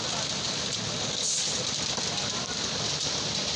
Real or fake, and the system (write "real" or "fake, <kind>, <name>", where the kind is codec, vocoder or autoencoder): real